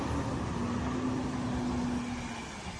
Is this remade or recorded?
recorded